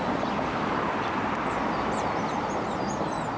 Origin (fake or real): real